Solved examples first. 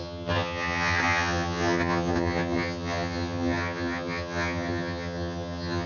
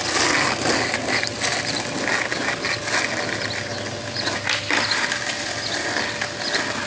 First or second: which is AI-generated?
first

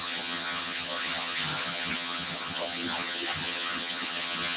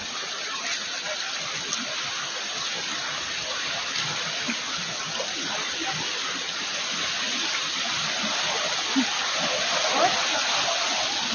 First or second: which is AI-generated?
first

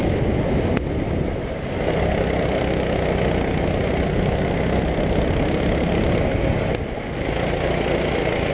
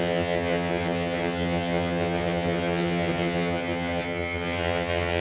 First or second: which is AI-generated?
second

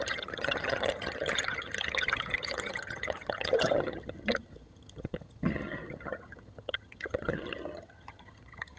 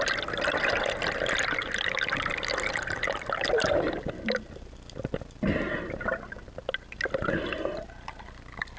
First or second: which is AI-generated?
first